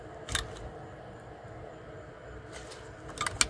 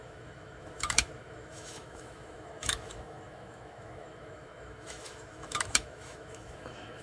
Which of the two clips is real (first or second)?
first